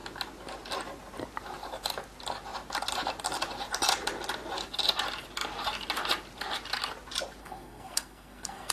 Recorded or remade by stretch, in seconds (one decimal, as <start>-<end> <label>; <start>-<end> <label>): 0.0-7.4 recorded; 7.4-8.7 remade